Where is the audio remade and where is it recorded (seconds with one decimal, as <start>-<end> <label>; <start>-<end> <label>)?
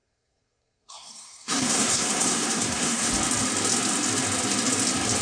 0.0-3.1 remade; 3.1-5.2 recorded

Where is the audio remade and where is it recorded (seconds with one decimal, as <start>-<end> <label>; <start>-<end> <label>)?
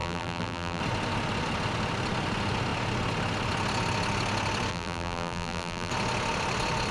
0.0-0.8 remade; 0.8-4.7 recorded; 4.7-5.9 remade; 5.9-6.9 recorded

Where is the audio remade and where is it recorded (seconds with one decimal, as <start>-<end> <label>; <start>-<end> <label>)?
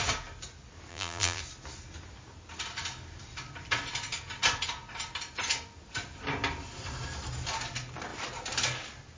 0.0-0.9 recorded; 0.9-1.4 remade; 1.4-9.2 recorded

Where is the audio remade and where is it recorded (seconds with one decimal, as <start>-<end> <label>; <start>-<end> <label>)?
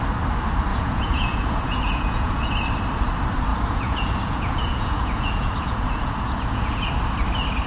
0.0-0.7 recorded; 0.7-2.5 remade; 2.5-3.5 recorded; 3.5-6.9 remade; 6.9-7.7 recorded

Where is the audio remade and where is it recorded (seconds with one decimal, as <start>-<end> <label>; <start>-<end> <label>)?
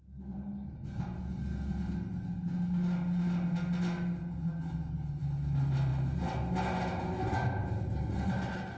0.0-8.8 recorded